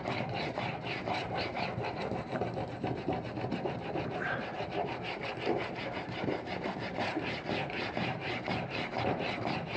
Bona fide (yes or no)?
no